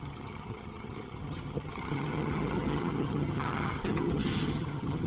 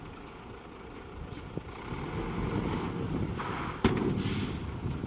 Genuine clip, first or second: second